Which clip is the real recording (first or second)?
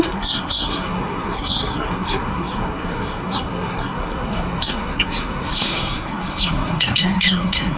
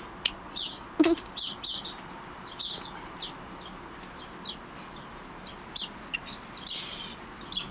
second